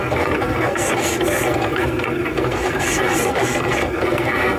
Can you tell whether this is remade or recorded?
remade